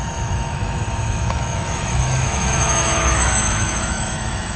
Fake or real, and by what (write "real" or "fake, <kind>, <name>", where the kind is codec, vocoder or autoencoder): fake, autoencoder, DAC-VAE